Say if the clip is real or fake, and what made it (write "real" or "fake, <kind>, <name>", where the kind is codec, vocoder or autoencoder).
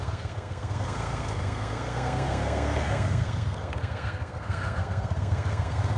fake, codec, SNAC